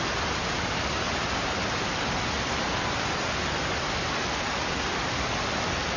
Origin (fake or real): real